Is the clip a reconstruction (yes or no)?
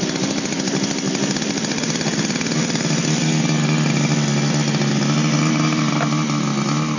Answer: no